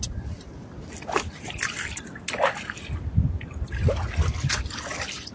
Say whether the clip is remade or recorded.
recorded